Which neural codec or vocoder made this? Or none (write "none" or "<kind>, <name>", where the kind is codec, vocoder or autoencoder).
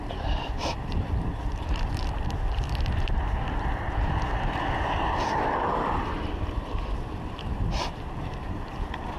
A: vocoder, BigVGAN v2